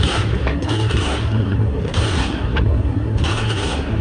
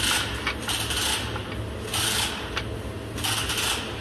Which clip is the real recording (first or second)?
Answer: second